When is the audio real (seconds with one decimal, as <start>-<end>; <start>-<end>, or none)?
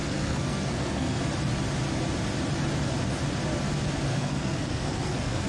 1.2-4.1